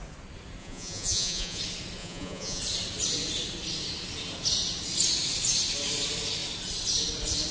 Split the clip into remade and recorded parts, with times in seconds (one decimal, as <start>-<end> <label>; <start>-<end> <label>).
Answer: 0.0-0.6 recorded; 0.6-1.6 remade; 1.6-2.0 recorded; 2.0-2.6 remade; 2.6-7.5 recorded